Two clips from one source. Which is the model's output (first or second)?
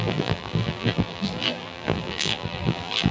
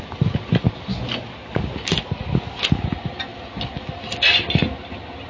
first